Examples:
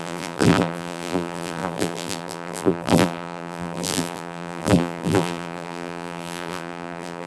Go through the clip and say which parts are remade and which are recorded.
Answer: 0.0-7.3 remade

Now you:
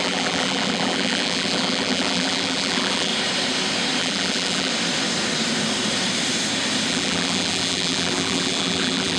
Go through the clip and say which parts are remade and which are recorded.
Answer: 0.0-3.1 remade; 3.1-4.0 recorded; 4.0-4.7 remade; 4.7-6.9 recorded; 6.9-9.2 remade

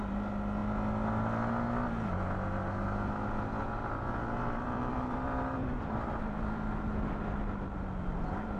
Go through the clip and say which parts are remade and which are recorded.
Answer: 0.0-3.6 recorded; 3.6-8.6 remade